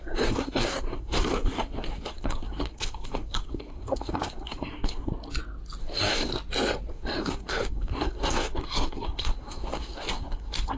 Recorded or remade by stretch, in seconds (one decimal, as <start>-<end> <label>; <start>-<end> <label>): 0.0-5.1 remade; 5.1-5.8 recorded; 5.8-6.3 remade; 6.3-6.9 recorded; 6.9-10.8 remade

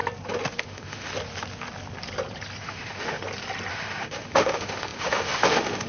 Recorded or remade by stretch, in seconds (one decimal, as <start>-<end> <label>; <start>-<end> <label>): 0.0-0.6 recorded; 0.6-1.1 remade; 1.1-2.6 recorded; 2.6-3.2 remade; 3.2-3.7 recorded; 3.7-5.9 remade

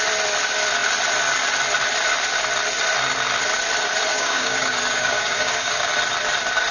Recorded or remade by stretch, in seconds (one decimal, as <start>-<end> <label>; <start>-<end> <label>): 0.0-4.1 recorded; 4.1-5.9 remade; 5.9-6.7 recorded

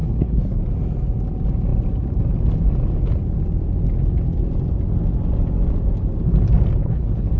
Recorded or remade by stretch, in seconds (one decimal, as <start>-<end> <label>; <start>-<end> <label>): 0.0-0.6 remade; 0.6-6.8 recorded; 6.8-7.4 remade

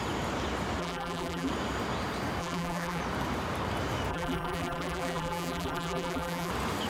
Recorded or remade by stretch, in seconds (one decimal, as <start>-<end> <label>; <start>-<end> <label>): 0.0-0.8 recorded; 0.8-1.5 remade; 1.5-2.4 recorded; 2.4-3.0 remade; 3.0-4.1 recorded; 4.1-6.5 remade; 6.5-6.9 recorded

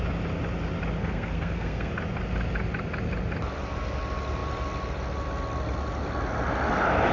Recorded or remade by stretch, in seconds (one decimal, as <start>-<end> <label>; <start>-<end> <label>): 0.0-1.0 recorded; 1.0-1.9 remade; 1.9-7.1 recorded

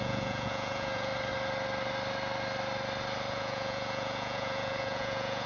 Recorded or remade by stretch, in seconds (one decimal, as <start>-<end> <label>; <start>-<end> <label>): 0.0-1.1 remade; 1.1-3.3 recorded; 3.3-5.5 remade

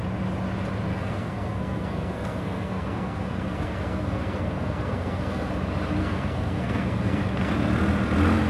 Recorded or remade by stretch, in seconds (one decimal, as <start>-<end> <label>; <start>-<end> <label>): 0.0-0.9 recorded; 0.9-5.5 remade; 5.5-6.0 recorded; 6.0-7.5 remade; 7.5-8.5 recorded